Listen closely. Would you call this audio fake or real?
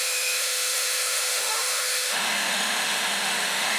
fake